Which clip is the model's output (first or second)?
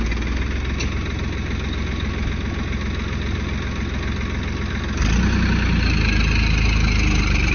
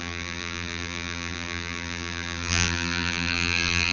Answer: second